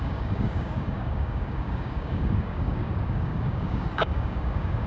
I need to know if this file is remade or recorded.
remade